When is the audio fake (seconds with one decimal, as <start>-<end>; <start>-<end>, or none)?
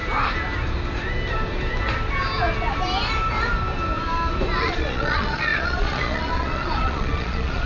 4.6-7.7